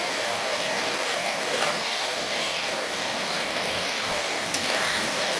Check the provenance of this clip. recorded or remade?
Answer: remade